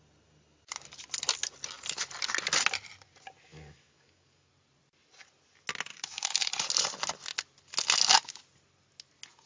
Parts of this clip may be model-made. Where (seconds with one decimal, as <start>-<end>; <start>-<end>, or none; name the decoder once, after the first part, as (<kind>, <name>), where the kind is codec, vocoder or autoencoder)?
3.5-4.5 (codec, DAC); 5.9-6.5